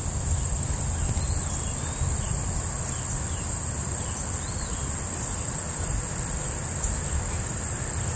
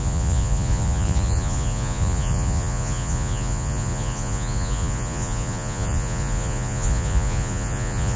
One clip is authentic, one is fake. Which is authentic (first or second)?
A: first